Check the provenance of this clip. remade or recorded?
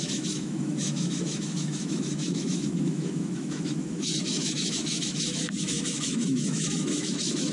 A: remade